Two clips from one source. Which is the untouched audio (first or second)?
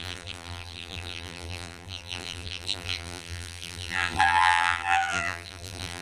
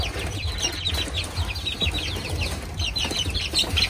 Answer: second